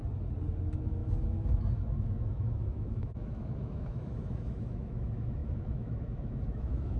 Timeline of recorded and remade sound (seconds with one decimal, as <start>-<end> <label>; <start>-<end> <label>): 0.0-0.6 recorded; 0.6-7.0 remade